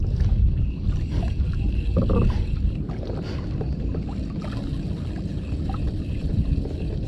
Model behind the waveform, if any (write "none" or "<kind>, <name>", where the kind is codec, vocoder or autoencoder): none